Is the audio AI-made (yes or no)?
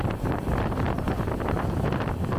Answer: no